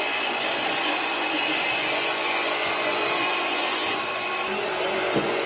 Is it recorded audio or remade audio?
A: remade